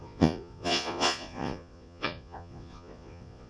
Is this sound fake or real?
fake